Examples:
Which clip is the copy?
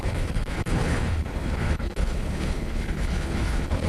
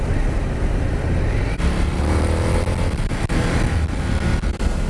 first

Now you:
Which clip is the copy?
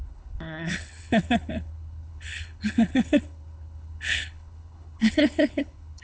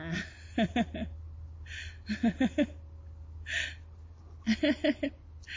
first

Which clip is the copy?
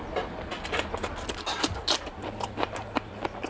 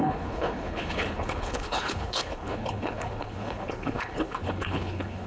second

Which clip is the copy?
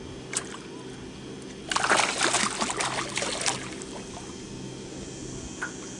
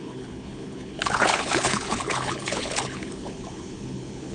second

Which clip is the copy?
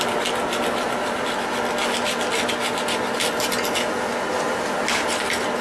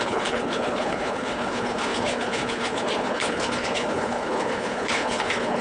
second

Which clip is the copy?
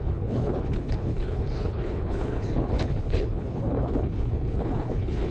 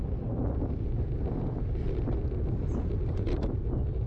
first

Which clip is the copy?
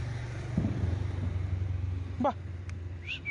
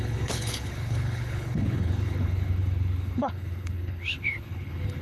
second